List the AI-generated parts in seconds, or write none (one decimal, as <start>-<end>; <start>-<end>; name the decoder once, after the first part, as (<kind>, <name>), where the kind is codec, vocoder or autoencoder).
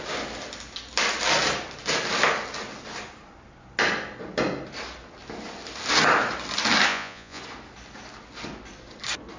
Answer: 6.9-7.4 (vocoder, Vocos)